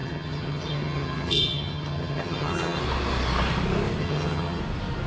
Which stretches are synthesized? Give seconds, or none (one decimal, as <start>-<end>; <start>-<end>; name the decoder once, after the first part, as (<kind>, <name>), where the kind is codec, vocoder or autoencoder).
0.0-2.8 (vocoder, HiFi-GAN); 4.0-4.6